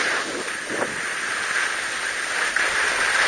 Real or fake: real